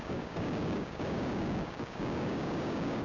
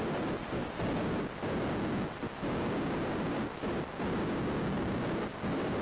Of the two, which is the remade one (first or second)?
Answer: first